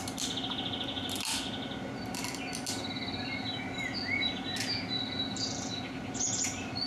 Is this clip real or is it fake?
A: real